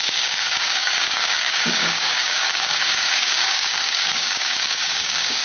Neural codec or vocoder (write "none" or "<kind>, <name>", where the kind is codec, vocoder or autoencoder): codec, DAC